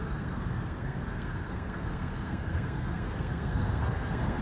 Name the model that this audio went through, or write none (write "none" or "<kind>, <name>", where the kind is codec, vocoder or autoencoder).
codec, SNAC